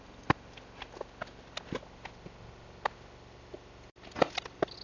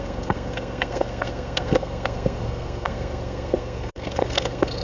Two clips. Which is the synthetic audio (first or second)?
second